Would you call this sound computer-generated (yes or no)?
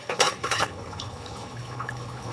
yes